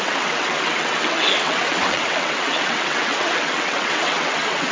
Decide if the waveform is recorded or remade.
remade